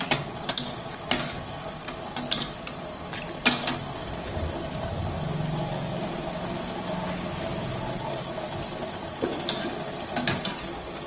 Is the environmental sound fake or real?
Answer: real